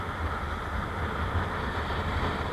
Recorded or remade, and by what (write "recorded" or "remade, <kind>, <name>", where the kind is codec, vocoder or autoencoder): recorded